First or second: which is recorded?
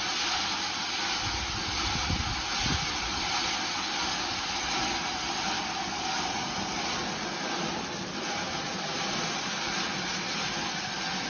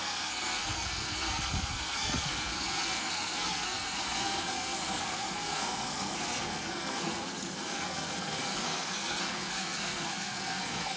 first